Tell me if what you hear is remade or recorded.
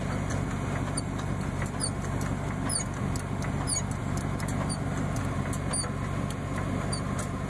recorded